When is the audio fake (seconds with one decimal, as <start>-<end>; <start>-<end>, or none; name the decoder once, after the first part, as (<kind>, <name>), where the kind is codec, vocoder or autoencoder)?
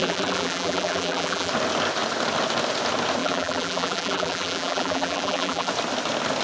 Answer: 0.0-1.5 (vocoder, BigVGAN v2); 3.2-5.7